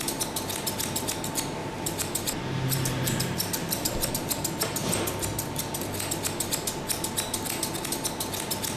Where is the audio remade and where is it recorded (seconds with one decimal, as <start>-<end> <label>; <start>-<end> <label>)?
0.0-1.6 recorded; 1.6-4.1 remade; 4.1-8.8 recorded